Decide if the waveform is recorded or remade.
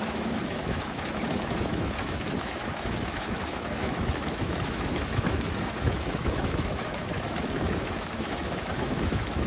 remade